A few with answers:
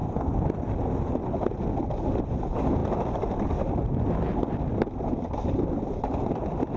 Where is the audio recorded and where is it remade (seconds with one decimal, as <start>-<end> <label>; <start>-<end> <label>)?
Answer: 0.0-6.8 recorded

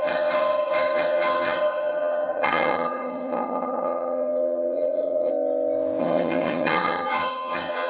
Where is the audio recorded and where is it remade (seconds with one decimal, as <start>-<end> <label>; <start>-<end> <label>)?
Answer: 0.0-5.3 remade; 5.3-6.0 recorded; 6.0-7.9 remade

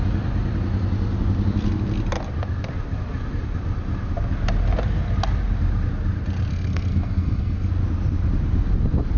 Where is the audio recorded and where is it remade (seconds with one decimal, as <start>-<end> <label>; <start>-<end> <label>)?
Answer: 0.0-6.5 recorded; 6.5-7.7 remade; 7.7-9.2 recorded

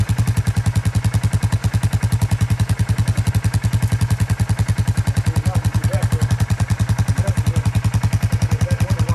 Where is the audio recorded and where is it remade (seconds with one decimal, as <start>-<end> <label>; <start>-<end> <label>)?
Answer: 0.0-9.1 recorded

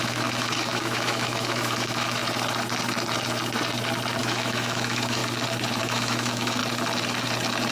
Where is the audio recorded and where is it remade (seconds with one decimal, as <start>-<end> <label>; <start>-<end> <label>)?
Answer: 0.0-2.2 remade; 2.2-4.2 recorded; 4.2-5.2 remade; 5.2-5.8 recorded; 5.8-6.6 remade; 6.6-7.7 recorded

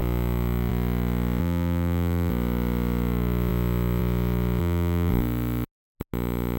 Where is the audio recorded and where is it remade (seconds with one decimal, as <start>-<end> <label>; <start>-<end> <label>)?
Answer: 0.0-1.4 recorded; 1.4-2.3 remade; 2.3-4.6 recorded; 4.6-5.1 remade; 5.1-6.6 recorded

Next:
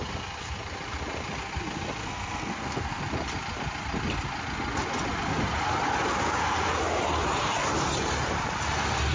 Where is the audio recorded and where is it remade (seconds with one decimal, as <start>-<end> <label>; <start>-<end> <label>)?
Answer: 0.0-2.0 recorded; 2.0-3.0 remade; 3.0-9.1 recorded